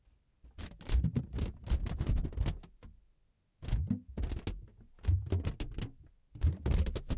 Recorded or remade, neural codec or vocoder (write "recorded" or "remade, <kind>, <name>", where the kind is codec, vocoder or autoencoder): recorded